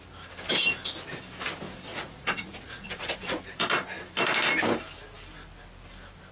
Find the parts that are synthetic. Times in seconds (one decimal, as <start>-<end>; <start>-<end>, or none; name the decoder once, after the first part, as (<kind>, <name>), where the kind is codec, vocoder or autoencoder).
1.9-3.4 (vocoder, Vocos)